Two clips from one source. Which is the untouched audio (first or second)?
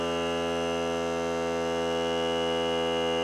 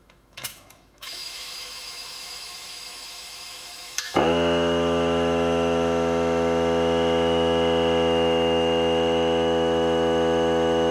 first